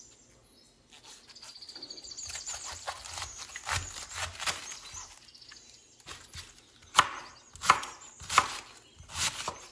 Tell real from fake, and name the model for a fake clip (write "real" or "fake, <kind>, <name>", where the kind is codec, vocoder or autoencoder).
real